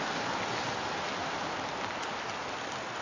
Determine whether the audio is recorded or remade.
recorded